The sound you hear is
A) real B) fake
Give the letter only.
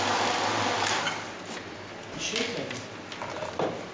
A